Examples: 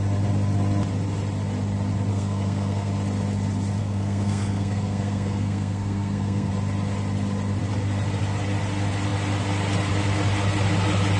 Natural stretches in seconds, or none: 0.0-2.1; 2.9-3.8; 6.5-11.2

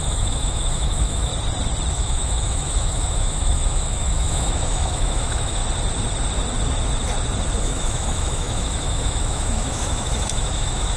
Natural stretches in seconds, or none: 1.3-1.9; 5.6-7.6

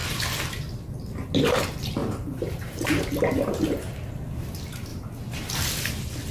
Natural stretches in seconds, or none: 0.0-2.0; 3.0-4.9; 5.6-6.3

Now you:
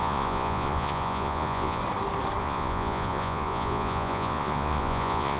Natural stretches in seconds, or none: 1.8-2.4

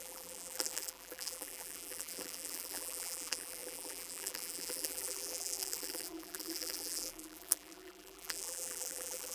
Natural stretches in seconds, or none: none

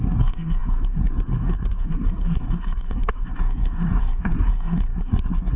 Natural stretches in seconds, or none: none

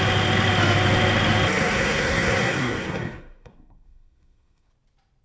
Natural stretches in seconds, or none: 0.0-1.6; 4.7-5.2